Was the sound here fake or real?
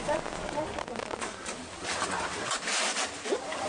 real